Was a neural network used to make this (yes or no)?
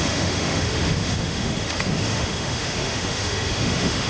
yes